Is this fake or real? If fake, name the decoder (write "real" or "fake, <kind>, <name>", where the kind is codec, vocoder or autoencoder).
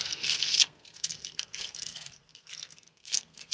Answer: fake, codec, SNAC